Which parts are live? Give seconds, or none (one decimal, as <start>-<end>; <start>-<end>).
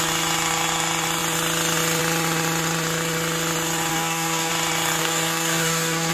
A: 0.0-3.9; 4.5-5.0